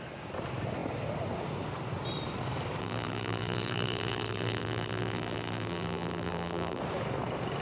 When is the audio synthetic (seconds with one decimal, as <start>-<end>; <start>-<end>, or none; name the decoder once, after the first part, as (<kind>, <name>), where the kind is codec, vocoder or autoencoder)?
2.8-6.8 (vocoder, BigVGAN v2)